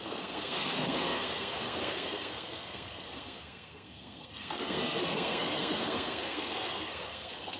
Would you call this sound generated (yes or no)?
yes